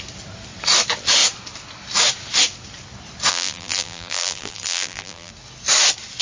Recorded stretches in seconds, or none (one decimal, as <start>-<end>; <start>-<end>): 0.0-3.3; 5.3-6.2